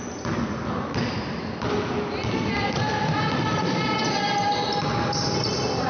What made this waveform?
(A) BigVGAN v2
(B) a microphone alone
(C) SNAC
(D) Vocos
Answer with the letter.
B